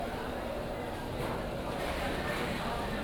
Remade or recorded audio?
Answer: remade